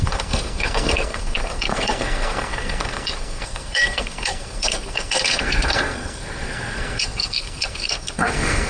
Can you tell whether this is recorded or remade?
remade